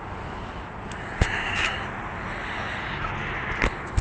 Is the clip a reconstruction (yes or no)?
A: no